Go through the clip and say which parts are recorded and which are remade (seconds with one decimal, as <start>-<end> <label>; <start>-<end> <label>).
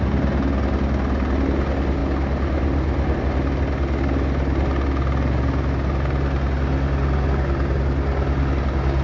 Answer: 0.0-9.0 recorded